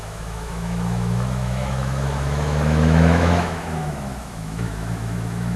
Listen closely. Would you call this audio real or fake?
fake